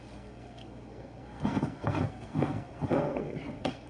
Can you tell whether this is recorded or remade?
remade